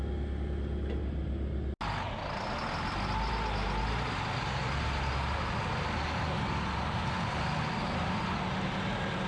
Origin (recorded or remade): recorded